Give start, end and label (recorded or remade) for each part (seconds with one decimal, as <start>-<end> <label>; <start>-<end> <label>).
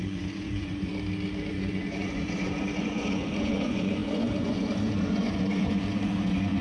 0.0-0.9 remade; 0.9-1.5 recorded; 1.5-6.6 remade